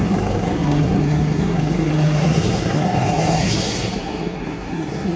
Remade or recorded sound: remade